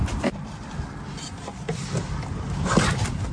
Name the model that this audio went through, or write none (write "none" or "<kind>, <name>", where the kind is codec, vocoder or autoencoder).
none